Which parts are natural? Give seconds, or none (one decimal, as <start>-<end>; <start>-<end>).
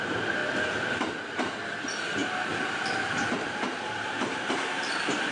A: 0.4-0.9